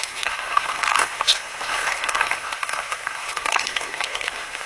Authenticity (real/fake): fake